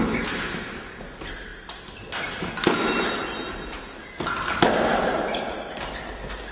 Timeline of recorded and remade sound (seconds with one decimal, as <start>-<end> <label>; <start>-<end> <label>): 0.0-6.5 recorded

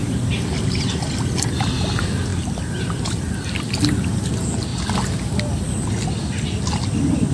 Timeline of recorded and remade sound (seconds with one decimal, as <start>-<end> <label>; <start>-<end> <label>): 0.0-7.3 recorded

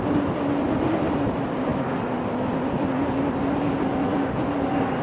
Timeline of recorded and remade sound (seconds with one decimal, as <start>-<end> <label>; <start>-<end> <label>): 0.0-5.0 recorded

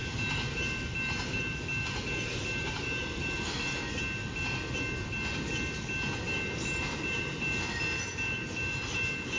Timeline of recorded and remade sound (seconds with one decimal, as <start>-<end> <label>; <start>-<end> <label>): 0.0-9.4 recorded

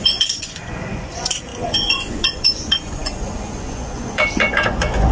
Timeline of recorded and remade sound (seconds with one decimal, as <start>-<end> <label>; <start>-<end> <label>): 0.0-5.1 remade

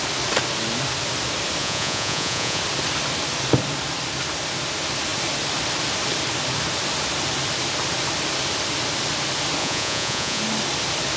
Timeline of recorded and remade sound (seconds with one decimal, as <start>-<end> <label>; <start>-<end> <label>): 0.0-1.6 recorded; 1.6-2.6 remade; 2.6-9.6 recorded; 9.6-10.4 remade; 10.4-11.2 recorded